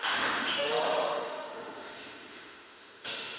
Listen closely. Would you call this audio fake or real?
fake